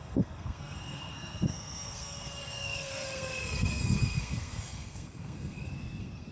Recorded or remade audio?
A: remade